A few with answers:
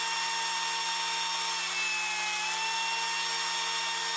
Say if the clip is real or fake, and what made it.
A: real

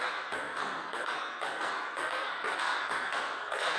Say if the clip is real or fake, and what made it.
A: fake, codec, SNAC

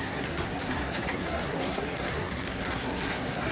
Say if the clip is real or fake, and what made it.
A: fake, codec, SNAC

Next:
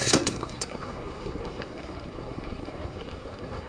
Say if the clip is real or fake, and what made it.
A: fake, codec, SNAC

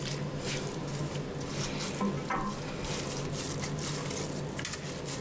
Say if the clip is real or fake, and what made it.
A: real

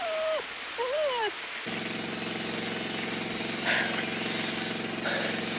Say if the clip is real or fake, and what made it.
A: real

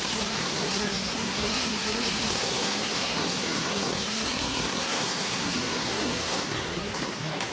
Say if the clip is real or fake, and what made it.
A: fake, codec, SNAC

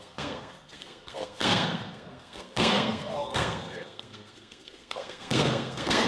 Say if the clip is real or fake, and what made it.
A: fake, codec, SNAC